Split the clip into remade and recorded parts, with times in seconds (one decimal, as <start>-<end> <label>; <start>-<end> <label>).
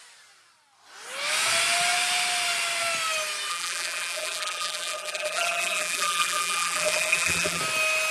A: 0.0-3.5 recorded; 3.5-7.6 remade; 7.6-8.1 recorded